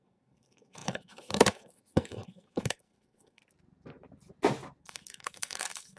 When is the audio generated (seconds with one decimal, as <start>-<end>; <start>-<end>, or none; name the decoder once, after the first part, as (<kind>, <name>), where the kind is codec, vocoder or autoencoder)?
0.0-3.4 (codec, SNAC); 4.8-6.0